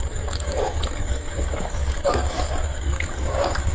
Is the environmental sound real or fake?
fake